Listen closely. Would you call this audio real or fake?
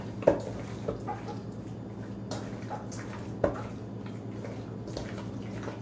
real